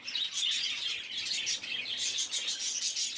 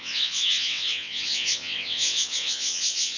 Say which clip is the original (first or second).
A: first